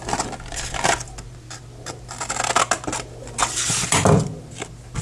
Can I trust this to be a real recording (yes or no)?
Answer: yes